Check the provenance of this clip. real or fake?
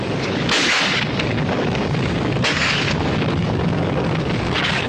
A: fake